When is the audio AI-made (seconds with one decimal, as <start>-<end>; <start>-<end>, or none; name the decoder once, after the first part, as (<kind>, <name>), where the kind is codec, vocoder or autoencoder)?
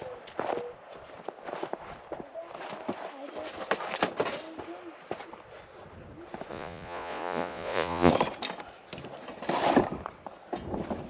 6.5-8.1 (vocoder, Vocos)